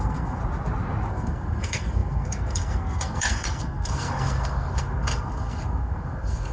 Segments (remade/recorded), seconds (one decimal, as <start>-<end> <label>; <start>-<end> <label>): 0.0-0.4 remade; 0.4-1.1 recorded; 1.1-6.5 remade